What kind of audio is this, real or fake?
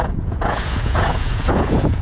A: fake